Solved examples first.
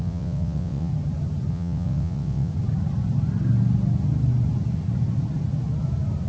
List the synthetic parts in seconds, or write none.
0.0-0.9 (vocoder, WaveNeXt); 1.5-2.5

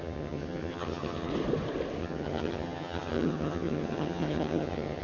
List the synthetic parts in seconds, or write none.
0.0-1.3 (vocoder, HiFi-GAN); 2.0-5.0

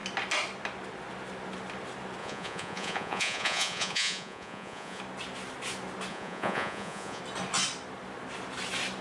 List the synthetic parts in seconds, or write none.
2.2-5.0 (vocoder, Vocos); 6.1-7.2

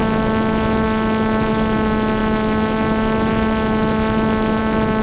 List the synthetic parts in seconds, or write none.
none